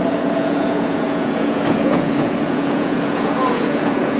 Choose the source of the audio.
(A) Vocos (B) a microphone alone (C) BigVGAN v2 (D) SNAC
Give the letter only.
A